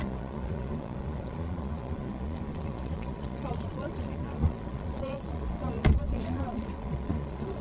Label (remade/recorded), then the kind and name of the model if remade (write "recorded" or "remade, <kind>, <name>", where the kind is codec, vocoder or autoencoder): remade, vocoder, Vocos